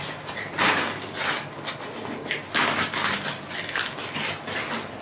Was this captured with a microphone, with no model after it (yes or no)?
yes